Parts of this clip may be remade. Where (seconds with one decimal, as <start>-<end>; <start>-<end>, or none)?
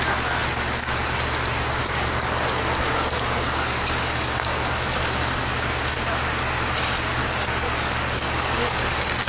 1.8-5.4; 7.2-8.9